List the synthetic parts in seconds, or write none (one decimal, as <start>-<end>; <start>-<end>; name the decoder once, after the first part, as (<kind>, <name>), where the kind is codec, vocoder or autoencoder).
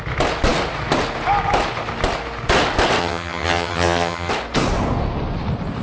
3.0-4.3 (vocoder, HiFi-GAN)